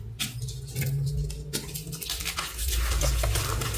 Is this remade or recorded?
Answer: recorded